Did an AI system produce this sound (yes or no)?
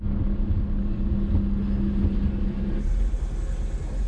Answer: no